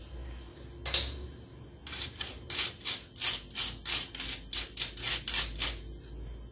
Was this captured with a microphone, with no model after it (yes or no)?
yes